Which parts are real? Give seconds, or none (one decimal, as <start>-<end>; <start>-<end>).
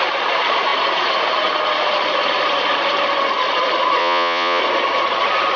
0.0-4.0; 4.6-5.6